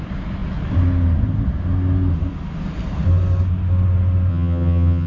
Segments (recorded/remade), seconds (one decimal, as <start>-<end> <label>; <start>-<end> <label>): 0.0-4.3 recorded; 4.3-5.1 remade